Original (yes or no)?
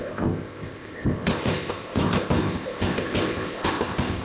no